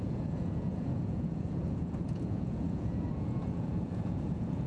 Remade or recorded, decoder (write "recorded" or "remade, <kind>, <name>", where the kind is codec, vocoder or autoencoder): remade, vocoder, Vocos